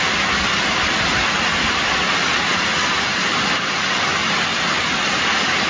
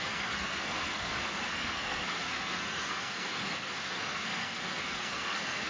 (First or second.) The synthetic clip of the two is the second